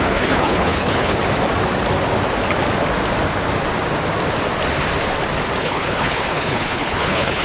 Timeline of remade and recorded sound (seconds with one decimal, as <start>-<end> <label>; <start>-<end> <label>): 0.0-1.2 remade; 1.2-5.6 recorded; 5.6-7.4 remade

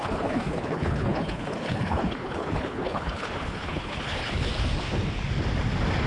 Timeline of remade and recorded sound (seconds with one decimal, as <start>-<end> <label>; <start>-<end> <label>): 0.0-4.5 remade; 4.5-6.1 recorded

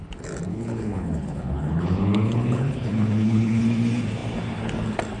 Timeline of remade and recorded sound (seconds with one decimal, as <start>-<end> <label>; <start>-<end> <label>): 0.0-0.5 recorded; 0.5-3.6 remade; 3.6-5.2 recorded

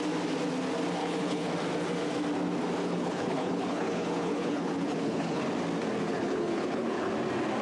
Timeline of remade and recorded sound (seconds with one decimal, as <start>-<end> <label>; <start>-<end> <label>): 0.0-1.0 recorded; 1.0-1.5 remade; 1.5-2.8 recorded; 2.8-5.4 remade; 5.4-6.1 recorded; 6.1-7.1 remade; 7.1-7.6 recorded